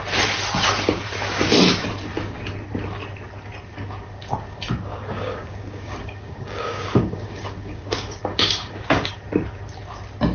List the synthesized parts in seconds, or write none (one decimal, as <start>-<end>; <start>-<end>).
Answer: 4.9-9.1